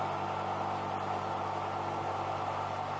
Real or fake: real